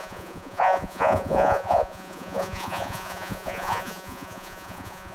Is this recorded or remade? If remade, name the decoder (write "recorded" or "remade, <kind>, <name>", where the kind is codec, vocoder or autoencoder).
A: remade, vocoder, Vocos